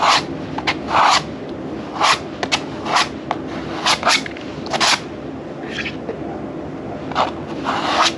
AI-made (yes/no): no